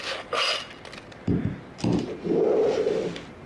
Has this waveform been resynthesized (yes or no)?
no